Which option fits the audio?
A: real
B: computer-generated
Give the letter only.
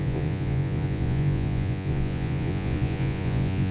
B